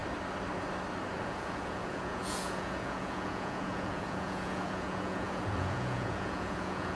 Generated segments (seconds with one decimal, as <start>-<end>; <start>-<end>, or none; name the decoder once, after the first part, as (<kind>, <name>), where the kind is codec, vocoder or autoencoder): 1.2-7.0 (vocoder, Vocos)